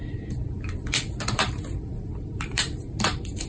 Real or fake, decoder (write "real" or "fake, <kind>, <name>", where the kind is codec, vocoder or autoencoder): fake, vocoder, BigVGAN v2